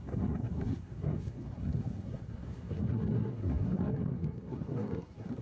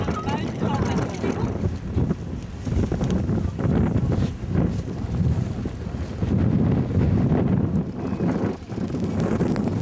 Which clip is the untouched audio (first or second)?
second